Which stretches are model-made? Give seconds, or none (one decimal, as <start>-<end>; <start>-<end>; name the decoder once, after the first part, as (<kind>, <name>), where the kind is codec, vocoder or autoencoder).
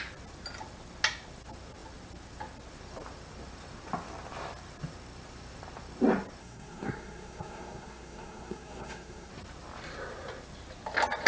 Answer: 6.4-9.3 (codec, SNAC)